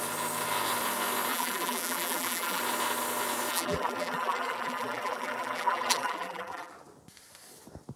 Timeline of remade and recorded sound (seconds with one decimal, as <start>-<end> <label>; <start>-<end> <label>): 0.0-1.3 recorded; 1.3-2.6 remade; 2.6-3.5 recorded; 3.5-6.7 remade; 6.7-8.0 recorded

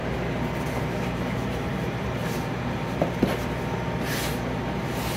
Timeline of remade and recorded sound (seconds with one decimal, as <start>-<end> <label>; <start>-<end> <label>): 0.0-0.8 recorded; 0.8-2.2 remade; 2.2-4.3 recorded; 4.3-5.2 remade

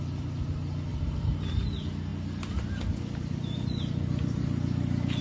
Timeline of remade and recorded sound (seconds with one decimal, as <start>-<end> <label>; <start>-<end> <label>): 0.0-0.9 recorded; 0.9-1.5 remade; 1.5-5.2 recorded